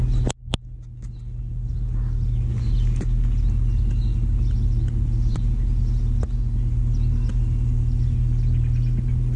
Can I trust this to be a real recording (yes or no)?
yes